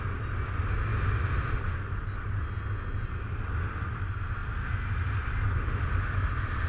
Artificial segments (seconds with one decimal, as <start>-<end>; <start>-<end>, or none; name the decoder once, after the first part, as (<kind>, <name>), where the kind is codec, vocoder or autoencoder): none